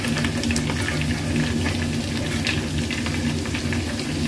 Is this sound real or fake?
real